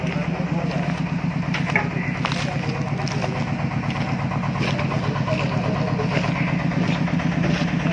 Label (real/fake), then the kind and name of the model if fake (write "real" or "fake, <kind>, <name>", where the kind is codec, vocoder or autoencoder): real